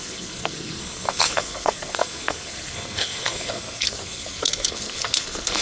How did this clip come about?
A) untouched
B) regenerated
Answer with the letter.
B